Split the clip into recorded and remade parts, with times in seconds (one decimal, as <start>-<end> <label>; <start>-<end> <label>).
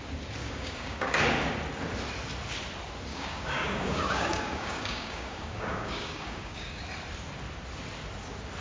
0.0-0.4 recorded; 0.4-1.2 remade; 1.2-3.1 recorded; 3.1-6.8 remade; 6.8-8.6 recorded